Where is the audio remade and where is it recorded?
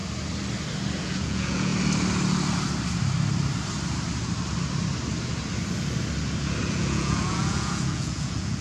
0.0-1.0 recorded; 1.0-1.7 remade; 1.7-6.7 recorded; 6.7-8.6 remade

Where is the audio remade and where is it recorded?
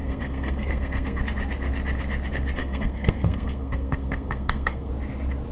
0.0-1.2 remade; 1.2-2.6 recorded; 2.6-4.9 remade; 4.9-5.5 recorded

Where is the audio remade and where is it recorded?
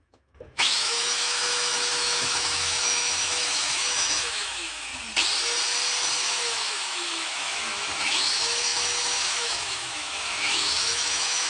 0.0-4.9 remade; 4.9-6.2 recorded; 6.2-11.5 remade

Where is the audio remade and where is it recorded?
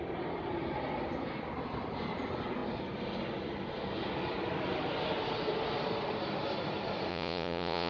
0.0-7.1 recorded; 7.1-7.9 remade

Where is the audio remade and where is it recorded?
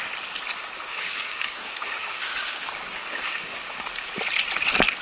0.0-0.9 recorded; 0.9-3.9 remade; 3.9-5.0 recorded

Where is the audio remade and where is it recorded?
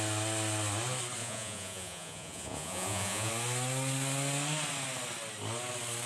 0.0-1.2 recorded; 1.2-3.3 remade; 3.3-6.1 recorded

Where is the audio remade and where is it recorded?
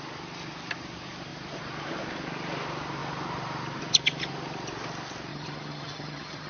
0.0-5.3 recorded; 5.3-6.5 remade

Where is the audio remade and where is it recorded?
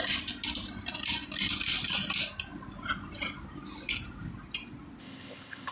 0.0-5.0 recorded; 5.0-5.7 remade